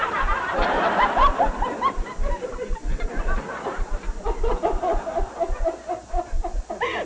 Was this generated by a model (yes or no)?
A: no